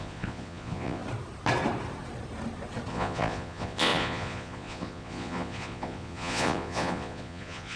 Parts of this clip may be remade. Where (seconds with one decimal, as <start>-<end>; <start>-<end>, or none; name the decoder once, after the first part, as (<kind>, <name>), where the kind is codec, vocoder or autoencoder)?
0.0-1.0 (vocoder, Vocos); 2.9-7.8

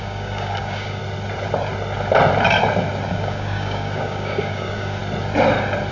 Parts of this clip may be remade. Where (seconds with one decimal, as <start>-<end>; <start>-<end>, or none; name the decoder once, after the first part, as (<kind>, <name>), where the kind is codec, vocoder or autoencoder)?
0.0-1.0 (codec, DAC); 3.1-5.0

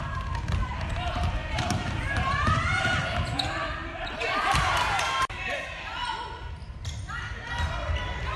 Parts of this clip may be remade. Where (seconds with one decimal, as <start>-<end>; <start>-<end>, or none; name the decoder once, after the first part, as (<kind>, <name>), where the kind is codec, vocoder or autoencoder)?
1.4-5.5 (vocoder, BigVGAN v2)

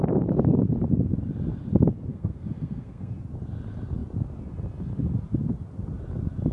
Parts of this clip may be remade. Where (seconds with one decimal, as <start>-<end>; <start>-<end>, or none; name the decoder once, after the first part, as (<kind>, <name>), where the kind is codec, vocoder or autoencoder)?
2.1-3.1 (codec, SNAC)

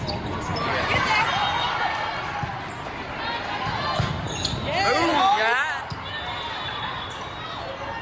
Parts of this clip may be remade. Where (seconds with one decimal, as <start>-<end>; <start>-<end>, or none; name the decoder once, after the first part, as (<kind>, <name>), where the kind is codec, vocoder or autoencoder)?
none